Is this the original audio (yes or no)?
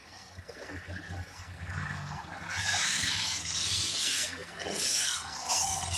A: no